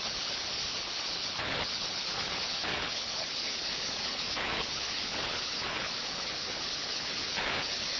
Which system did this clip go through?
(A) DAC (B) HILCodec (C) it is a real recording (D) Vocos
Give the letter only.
B